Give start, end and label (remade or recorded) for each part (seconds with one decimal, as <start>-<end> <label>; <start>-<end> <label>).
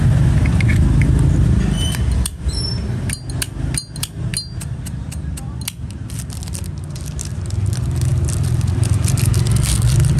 0.0-8.1 recorded; 8.1-10.2 remade